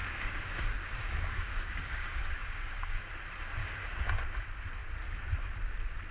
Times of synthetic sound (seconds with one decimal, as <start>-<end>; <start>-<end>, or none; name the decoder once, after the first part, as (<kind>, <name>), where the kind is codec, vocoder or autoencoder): 0.0-3.1 (codec, DAC); 3.6-4.2